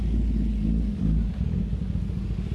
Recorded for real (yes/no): yes